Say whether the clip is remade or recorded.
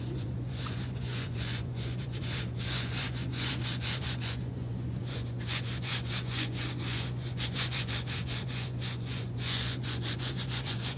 remade